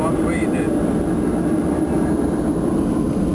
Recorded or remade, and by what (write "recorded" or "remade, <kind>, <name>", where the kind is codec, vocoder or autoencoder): recorded